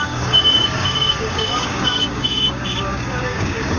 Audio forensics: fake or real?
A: fake